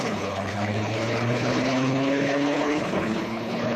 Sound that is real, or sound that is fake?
fake